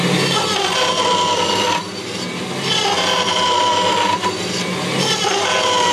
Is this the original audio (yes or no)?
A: no